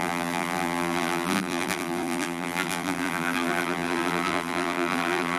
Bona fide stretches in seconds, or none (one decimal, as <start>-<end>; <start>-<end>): none